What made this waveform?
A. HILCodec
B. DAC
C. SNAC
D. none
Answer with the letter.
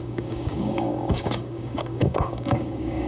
B